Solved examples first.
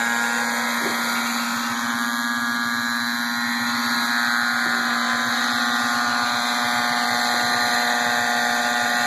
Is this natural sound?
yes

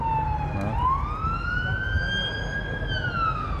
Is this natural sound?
yes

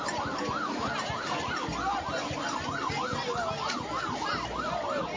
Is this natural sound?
yes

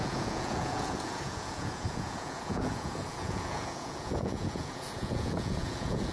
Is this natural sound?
no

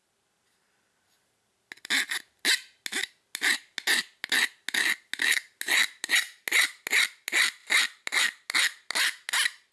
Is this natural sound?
yes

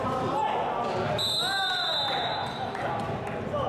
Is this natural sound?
yes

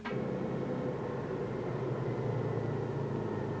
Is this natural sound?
yes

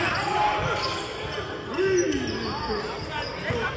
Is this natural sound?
yes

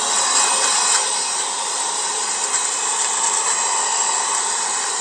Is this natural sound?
yes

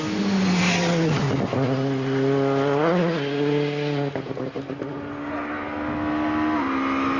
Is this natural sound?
yes